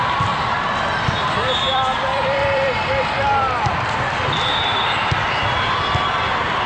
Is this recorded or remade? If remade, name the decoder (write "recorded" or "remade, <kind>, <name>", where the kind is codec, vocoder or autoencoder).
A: remade, vocoder, BigVGAN v2